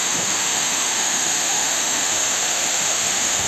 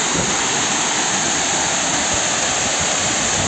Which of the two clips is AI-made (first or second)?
first